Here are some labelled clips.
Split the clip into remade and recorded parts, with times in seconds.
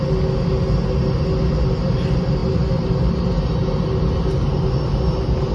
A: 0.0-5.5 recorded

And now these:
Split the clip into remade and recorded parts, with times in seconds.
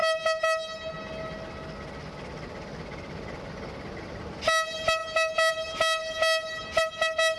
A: 0.0-7.4 recorded